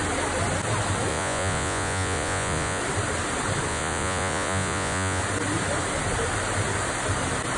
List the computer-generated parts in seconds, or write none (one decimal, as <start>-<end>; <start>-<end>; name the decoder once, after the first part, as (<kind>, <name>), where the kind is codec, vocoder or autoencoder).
1.1-2.8 (vocoder, Vocos); 3.7-5.2